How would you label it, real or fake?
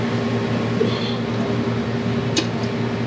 real